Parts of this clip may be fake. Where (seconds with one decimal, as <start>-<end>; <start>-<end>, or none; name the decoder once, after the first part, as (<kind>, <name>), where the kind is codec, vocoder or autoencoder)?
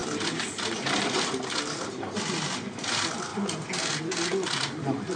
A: 0.0-1.3 (vocoder, BigVGAN v2)